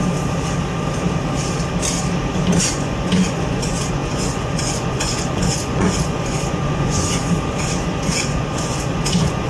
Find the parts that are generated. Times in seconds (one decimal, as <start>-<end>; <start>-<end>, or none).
2.6-9.5